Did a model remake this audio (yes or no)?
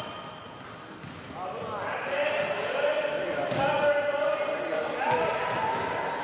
no